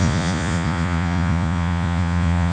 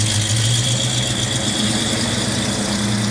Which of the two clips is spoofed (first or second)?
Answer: first